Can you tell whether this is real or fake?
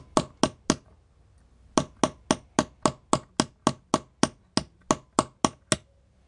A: real